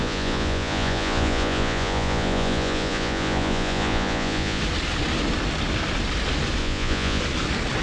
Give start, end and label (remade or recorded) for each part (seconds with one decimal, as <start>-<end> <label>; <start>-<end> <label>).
0.0-4.6 remade; 4.6-6.6 recorded; 6.6-7.2 remade; 7.2-7.8 recorded